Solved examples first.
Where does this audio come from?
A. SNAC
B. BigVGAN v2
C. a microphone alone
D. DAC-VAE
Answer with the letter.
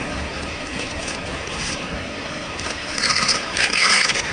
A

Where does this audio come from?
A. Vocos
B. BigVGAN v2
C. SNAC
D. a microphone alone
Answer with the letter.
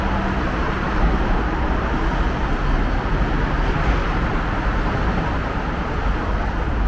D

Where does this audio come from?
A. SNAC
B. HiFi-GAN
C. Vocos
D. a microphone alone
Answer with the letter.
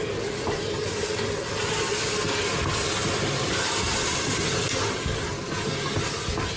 D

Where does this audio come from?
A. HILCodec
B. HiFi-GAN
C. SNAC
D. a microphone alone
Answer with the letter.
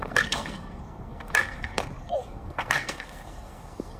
C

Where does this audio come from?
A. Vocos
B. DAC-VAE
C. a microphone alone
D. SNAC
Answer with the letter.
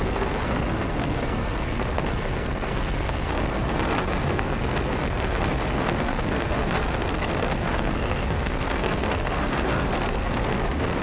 D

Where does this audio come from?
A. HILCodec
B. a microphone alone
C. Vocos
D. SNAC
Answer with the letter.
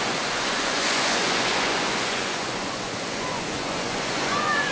C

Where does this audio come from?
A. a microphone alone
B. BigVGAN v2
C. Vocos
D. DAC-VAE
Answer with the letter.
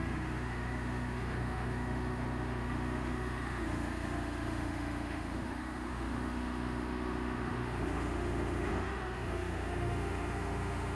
D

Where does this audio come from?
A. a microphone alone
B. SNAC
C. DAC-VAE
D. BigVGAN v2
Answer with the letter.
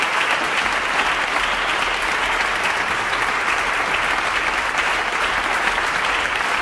D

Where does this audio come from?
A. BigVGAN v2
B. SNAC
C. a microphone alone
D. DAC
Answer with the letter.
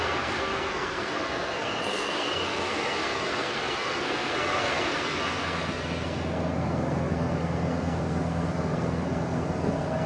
B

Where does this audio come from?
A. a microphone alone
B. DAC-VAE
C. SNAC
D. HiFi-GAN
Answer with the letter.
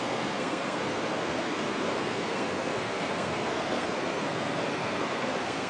C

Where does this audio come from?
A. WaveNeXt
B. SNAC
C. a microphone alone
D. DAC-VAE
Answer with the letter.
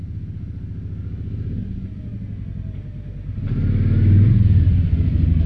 C